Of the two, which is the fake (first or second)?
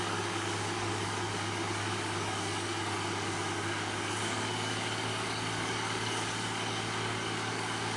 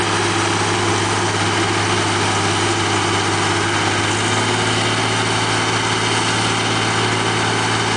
first